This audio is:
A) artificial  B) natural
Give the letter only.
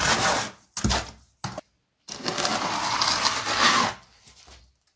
B